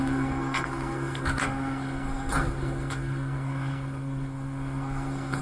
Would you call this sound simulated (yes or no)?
yes